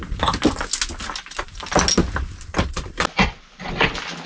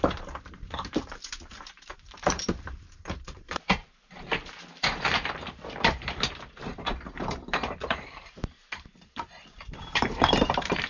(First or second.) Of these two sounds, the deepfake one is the second